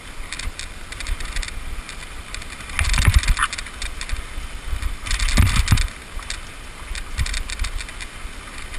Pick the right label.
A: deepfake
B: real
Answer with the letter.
B